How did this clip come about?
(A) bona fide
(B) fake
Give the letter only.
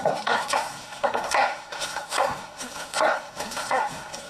B